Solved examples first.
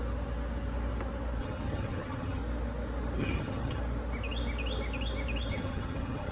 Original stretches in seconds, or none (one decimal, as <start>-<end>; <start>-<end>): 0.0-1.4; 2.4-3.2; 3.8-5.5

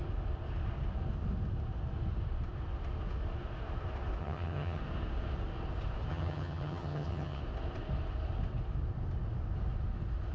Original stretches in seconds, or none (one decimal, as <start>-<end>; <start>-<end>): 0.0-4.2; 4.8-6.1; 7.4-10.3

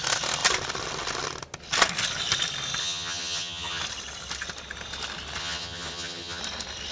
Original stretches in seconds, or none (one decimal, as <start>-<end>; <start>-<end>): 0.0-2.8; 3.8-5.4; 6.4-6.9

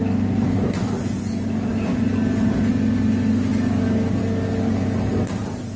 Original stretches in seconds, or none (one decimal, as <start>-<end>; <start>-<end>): 0.0-5.8